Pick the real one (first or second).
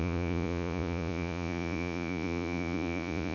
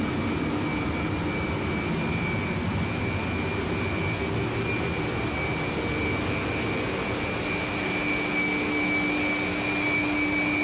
second